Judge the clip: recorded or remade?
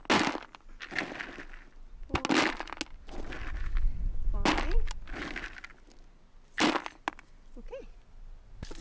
recorded